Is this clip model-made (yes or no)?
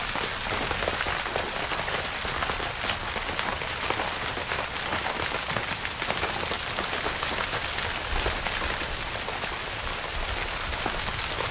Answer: no